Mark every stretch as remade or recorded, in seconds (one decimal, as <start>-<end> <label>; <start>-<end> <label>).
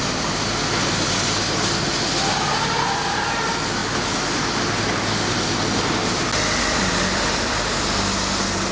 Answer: 0.0-8.7 recorded